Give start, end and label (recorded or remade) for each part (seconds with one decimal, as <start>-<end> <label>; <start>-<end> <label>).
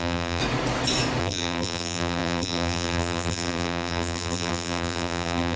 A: 0.0-0.4 remade; 0.4-1.2 recorded; 1.2-5.6 remade